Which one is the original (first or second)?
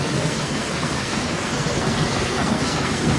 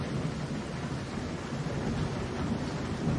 second